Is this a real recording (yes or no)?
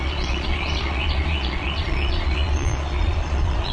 no